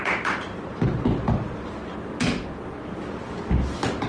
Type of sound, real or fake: real